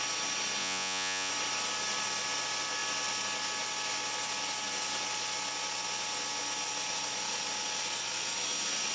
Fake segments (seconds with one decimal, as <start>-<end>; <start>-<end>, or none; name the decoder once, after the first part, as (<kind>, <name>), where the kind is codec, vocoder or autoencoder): 0.6-1.3 (vocoder, Vocos)